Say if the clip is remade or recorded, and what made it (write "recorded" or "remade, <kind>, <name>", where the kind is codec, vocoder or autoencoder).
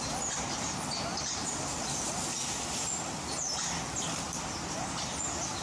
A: recorded